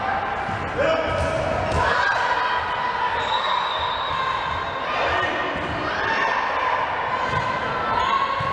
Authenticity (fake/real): real